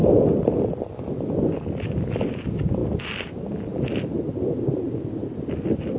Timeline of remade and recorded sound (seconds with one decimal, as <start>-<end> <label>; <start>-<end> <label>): 0.0-6.0 recorded